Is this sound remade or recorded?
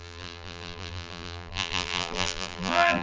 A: remade